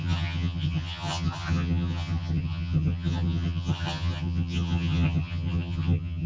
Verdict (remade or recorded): remade